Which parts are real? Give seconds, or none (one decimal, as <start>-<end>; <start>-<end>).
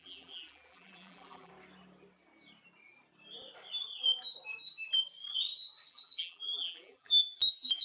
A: 1.5-5.9